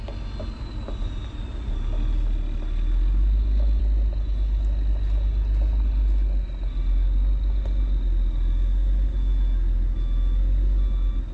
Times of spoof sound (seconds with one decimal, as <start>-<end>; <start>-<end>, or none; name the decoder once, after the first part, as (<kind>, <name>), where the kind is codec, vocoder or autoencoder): none